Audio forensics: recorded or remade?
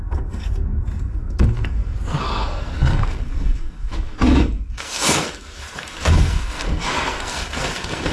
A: remade